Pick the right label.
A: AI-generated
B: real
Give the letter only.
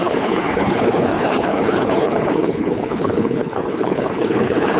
A